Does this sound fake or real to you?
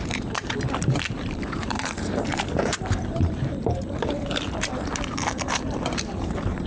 fake